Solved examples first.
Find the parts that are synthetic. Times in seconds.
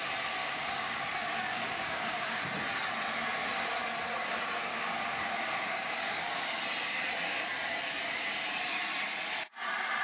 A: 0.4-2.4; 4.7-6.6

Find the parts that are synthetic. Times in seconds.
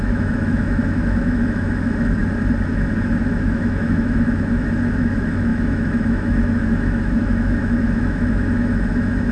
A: 0.0-2.2; 3.2-9.3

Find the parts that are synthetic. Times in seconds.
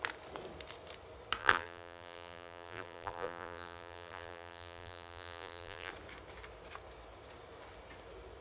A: 1.4-5.9